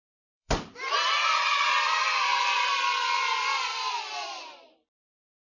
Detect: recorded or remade remade